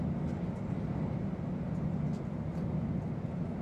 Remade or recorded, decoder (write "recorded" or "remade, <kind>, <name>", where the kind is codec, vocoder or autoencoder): recorded